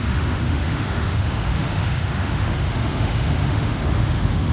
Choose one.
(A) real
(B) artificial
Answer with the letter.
B